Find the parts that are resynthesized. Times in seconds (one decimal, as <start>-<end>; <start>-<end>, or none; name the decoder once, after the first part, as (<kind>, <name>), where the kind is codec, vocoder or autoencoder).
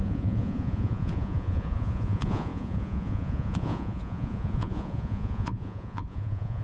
0.0-6.6 (vocoder, Vocos)